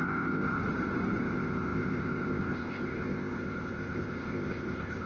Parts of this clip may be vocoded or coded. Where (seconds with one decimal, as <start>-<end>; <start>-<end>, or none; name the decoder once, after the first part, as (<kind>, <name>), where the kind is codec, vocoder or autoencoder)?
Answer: 0.0-0.6 (codec, ZipCodec); 1.2-5.1